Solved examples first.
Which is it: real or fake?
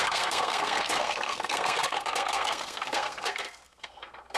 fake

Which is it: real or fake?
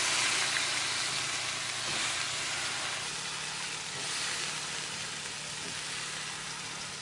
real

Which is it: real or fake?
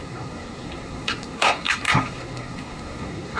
fake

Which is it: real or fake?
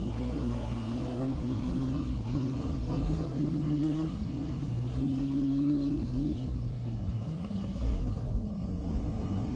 fake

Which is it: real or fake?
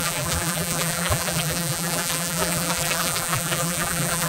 fake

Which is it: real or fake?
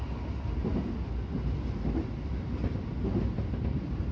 real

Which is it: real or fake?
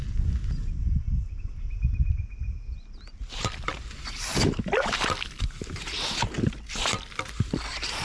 real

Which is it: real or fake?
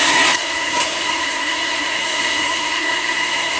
fake